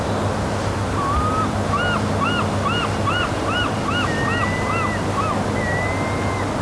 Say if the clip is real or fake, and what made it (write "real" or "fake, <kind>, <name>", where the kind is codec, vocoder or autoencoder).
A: real